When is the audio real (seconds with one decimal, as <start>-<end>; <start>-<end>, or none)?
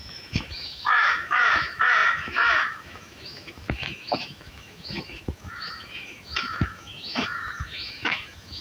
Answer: none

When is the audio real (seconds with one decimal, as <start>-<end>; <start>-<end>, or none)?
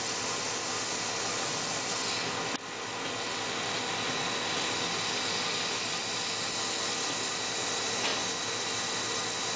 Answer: 0.0-9.6